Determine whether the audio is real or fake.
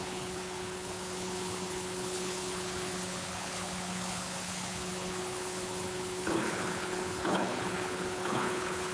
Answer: fake